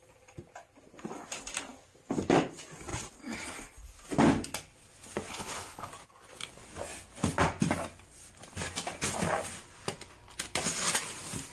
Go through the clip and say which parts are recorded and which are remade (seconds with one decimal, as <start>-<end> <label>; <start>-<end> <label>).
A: 0.0-5.3 recorded; 5.3-5.9 remade; 5.9-11.5 recorded